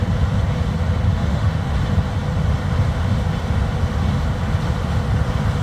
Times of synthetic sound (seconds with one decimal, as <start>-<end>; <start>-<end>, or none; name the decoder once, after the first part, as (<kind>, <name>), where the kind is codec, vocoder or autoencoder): 1.1-1.7 (autoencoder, DAC-VAE)